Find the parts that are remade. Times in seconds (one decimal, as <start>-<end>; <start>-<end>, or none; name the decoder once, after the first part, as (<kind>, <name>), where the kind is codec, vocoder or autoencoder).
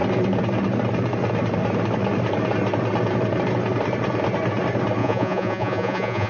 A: 5.0-6.3 (vocoder, Vocos)